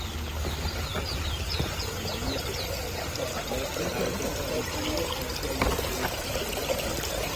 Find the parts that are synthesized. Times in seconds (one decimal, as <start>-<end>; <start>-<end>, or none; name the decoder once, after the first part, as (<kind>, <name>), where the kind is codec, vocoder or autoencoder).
none